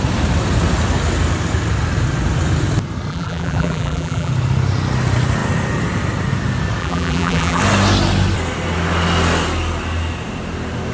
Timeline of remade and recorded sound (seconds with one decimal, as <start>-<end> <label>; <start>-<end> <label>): 0.0-3.1 recorded; 3.1-4.3 remade; 4.3-6.8 recorded; 6.8-7.6 remade; 7.6-10.9 recorded